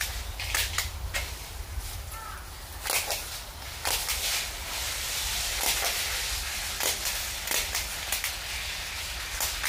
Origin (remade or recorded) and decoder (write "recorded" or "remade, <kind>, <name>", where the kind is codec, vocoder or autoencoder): recorded